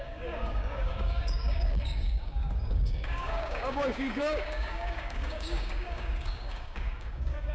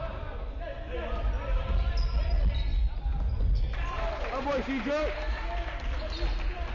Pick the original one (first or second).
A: second